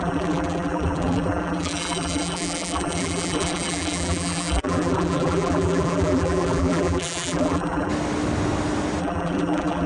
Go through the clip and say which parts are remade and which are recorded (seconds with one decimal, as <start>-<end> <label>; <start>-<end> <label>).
0.0-7.9 remade; 7.9-9.0 recorded; 9.0-9.9 remade